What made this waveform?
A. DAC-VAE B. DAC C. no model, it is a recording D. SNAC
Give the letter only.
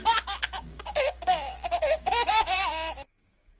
B